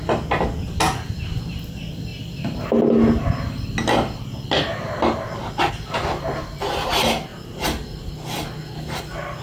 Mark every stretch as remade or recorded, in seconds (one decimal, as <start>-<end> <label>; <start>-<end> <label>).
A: 0.0-9.4 recorded